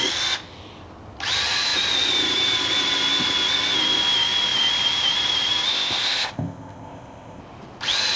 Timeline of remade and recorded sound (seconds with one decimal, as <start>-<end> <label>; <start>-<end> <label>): 0.0-5.7 recorded; 5.7-7.4 remade; 7.4-8.2 recorded